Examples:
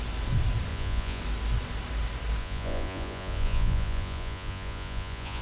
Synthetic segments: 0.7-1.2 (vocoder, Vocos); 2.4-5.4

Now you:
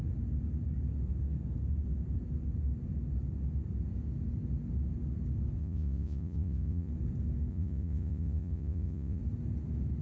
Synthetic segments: 5.6-6.9 (vocoder, Vocos); 7.5-9.2

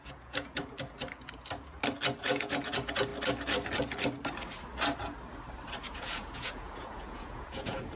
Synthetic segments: 0.0-0.6 (vocoder, Vocos); 2.2-3.1; 5.8-8.0

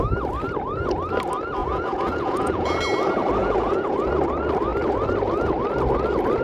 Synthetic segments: 1.6-2.8 (vocoder, Vocos); 3.4-4.1

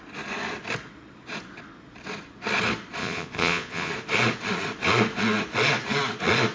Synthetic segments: 3.0-3.9 (vocoder, Vocos)